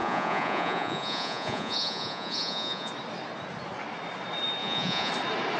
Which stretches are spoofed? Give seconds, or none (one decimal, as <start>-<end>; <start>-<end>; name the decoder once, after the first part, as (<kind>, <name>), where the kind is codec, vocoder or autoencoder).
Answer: 0.0-2.9 (vocoder, Vocos); 4.6-5.1